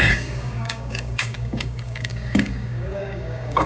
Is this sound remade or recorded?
remade